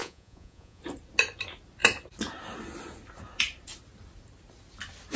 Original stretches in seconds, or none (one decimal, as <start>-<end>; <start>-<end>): 0.8-5.2